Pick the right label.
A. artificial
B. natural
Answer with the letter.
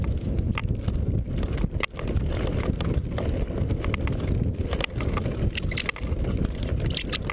B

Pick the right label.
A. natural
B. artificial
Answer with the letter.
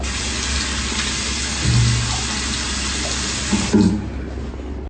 A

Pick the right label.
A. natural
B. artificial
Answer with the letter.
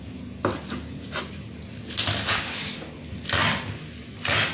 A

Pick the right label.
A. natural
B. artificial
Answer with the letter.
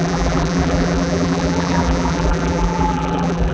B